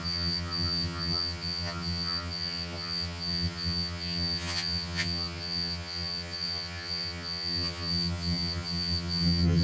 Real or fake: fake